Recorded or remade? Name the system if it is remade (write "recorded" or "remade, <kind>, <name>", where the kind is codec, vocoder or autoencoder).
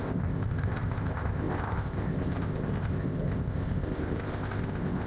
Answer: remade, codec, ZipCodec